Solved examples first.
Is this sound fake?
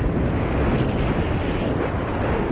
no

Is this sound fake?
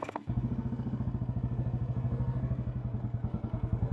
yes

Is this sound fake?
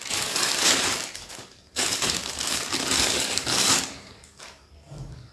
yes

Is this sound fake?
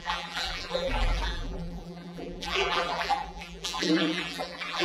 yes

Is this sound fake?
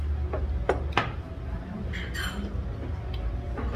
no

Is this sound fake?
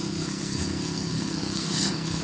yes